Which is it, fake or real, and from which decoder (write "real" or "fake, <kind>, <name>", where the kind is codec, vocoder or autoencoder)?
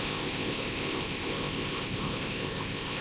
fake, codec, ZipCodec